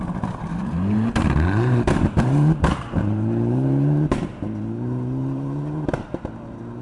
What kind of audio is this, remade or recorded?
remade